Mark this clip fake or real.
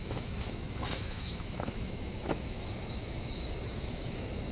fake